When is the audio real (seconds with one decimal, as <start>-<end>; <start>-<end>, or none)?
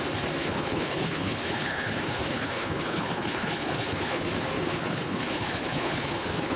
0.0-0.4; 4.3-4.7